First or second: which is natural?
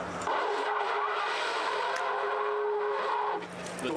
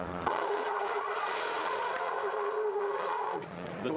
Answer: first